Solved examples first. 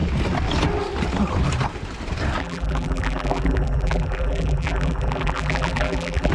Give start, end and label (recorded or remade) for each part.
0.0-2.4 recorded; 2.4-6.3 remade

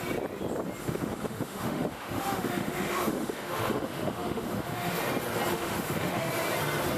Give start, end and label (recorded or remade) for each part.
0.0-0.8 recorded; 0.8-5.0 remade; 5.0-5.5 recorded; 5.5-6.3 remade; 6.3-7.0 recorded

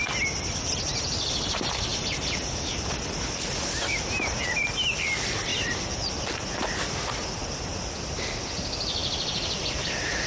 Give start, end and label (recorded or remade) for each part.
0.0-5.5 recorded; 5.5-6.2 remade; 6.2-9.0 recorded; 9.0-9.8 remade; 9.8-10.3 recorded